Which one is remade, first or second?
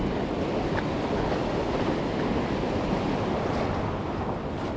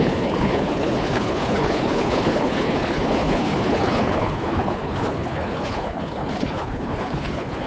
second